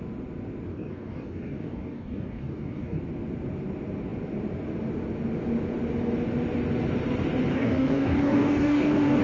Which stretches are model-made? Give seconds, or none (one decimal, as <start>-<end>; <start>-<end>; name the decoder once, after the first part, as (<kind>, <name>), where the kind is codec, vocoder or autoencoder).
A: 0.7-3.0 (codec, DAC); 7.5-9.2